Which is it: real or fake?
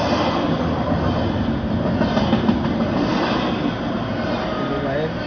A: real